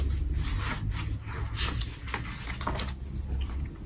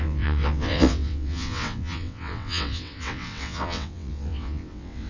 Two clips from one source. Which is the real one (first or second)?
first